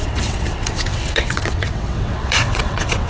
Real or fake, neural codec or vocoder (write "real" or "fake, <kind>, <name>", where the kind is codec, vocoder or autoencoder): fake, vocoder, WaveNeXt